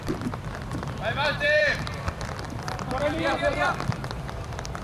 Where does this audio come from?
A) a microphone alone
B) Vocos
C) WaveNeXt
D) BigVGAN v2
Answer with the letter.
D